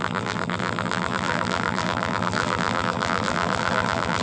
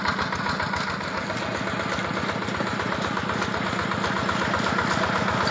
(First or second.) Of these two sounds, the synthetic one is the first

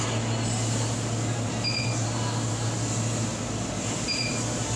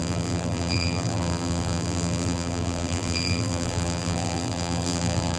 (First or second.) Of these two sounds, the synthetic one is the second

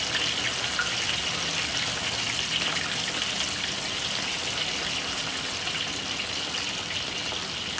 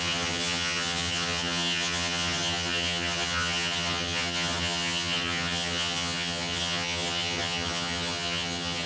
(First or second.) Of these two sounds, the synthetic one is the second